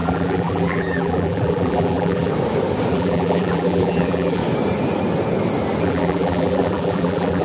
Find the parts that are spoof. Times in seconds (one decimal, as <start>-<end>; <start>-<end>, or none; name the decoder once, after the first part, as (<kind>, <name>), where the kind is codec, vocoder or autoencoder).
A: 0.0-2.3 (vocoder, BigVGAN v2); 2.9-4.4; 5.8-7.4